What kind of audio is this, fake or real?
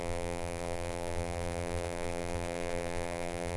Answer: fake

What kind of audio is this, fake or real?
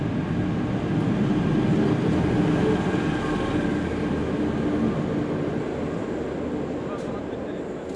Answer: real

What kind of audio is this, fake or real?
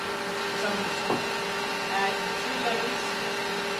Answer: real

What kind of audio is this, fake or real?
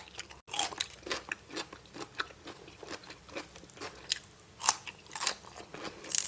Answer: real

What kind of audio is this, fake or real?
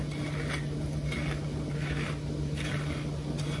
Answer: real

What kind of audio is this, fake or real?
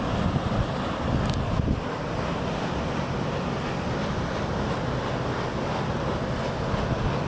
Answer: real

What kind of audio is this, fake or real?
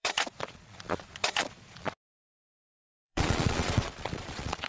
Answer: fake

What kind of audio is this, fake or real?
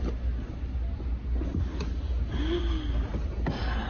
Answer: real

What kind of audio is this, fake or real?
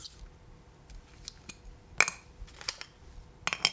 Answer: real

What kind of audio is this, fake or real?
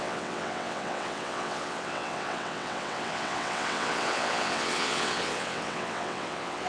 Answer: fake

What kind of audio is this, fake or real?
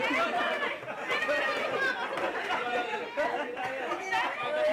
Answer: real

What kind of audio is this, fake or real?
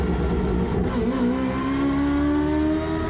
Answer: real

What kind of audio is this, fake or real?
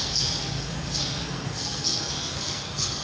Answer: fake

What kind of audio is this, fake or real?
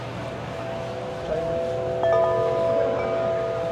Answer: real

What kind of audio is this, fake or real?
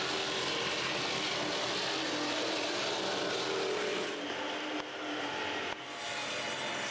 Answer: real